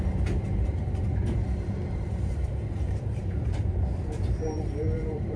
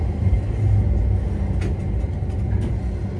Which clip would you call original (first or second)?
second